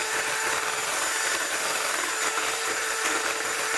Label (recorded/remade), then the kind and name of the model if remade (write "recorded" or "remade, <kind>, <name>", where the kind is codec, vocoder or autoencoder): remade, vocoder, BigVGAN v2